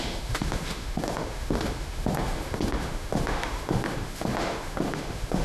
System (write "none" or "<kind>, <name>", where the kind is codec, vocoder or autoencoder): autoencoder, DAC-VAE